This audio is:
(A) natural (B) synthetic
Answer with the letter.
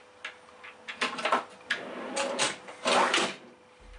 A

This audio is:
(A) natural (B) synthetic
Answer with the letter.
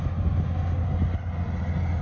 A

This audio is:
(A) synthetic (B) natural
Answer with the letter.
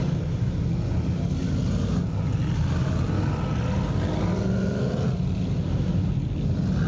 B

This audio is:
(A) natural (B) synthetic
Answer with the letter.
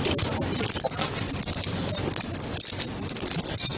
A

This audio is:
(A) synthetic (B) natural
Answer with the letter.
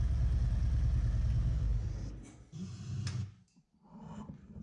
B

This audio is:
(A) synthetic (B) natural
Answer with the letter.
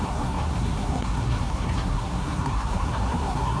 A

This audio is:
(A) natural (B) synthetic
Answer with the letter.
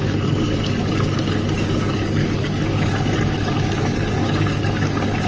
B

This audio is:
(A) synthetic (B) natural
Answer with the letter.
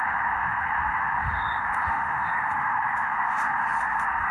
A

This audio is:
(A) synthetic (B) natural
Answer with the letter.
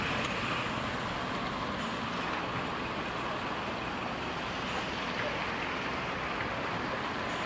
B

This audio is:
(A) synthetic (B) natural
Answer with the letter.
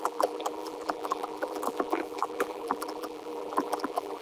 A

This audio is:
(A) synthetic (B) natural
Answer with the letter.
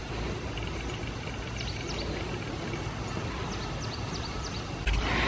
B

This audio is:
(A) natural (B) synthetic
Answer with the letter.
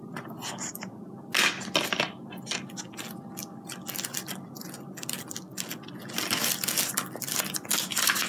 A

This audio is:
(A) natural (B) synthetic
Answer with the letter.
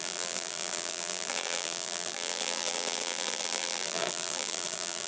B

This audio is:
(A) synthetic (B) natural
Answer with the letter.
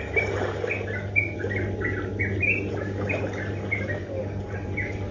B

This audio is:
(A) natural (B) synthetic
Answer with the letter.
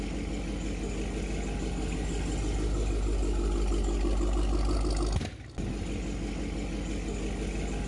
A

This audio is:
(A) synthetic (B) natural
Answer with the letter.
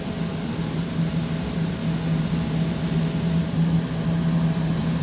B